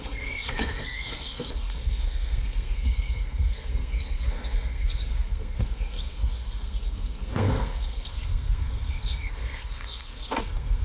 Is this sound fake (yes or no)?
yes